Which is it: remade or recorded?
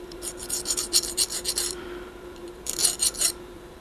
remade